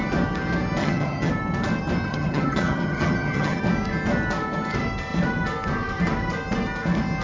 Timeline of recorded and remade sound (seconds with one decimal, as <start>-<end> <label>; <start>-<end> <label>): 0.0-0.8 recorded; 0.8-1.3 remade; 1.3-2.1 recorded; 2.1-3.6 remade; 3.6-7.2 recorded